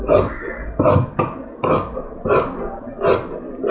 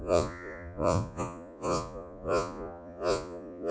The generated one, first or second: second